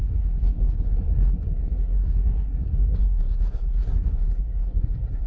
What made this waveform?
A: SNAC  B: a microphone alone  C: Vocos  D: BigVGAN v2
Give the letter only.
A